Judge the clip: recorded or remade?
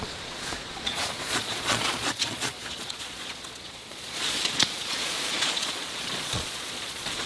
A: remade